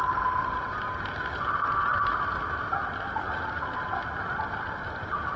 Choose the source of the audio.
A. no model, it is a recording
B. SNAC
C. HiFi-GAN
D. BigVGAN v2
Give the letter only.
A